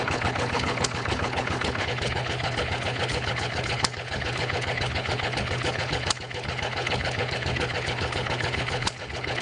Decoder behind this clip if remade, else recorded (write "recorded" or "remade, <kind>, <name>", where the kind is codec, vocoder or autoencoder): remade, codec, HILCodec